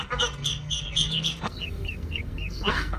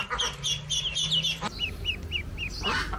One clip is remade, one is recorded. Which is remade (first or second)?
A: first